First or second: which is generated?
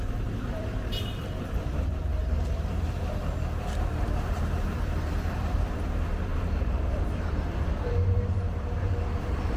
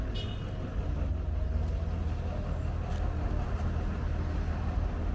first